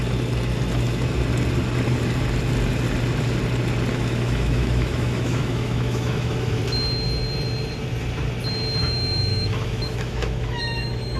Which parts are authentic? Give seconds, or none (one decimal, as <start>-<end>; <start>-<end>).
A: 0.0-3.9; 6.6-8.8